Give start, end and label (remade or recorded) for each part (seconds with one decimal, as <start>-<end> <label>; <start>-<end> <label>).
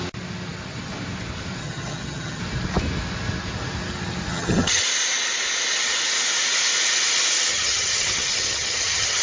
0.0-1.6 recorded; 1.6-2.4 remade; 2.4-4.3 recorded; 4.3-4.8 remade; 4.8-7.5 recorded; 7.5-9.2 remade